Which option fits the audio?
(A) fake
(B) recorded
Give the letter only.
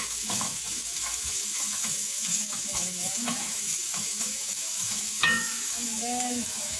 A